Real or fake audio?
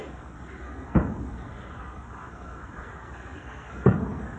fake